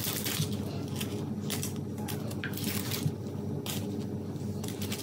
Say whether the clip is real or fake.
real